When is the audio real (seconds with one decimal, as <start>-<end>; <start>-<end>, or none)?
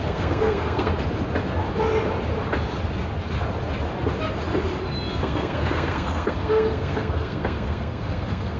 0.9-5.1